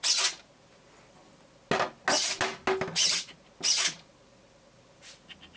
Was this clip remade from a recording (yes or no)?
no